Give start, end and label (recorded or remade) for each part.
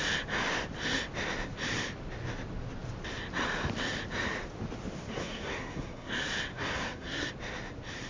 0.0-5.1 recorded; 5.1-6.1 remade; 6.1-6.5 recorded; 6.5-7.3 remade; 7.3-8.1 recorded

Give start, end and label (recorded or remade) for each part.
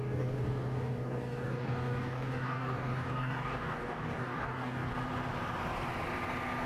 0.0-4.9 remade; 4.9-6.7 recorded